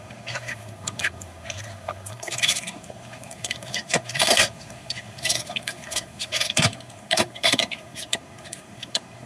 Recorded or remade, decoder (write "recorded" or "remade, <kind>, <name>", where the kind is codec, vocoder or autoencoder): remade, codec, SNAC